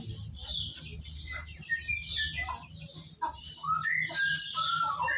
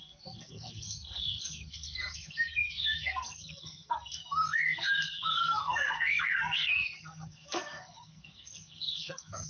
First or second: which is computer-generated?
second